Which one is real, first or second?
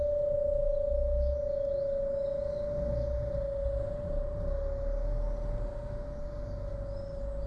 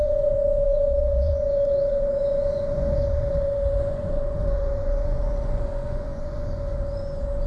first